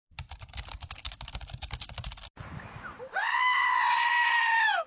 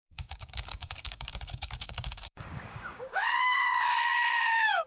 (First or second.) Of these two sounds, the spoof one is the second